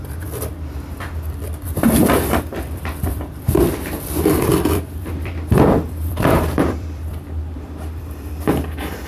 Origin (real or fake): fake